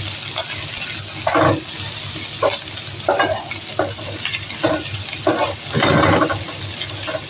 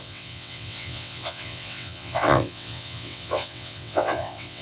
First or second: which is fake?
second